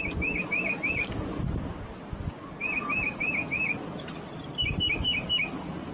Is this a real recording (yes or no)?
yes